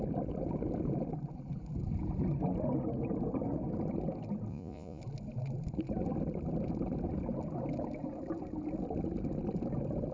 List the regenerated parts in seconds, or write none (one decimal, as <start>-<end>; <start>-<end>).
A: 4.5-5.0